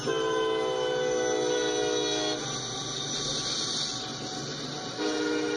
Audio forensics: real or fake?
real